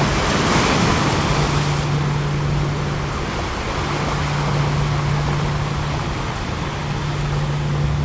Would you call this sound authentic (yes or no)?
yes